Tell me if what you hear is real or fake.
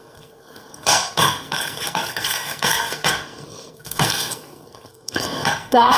fake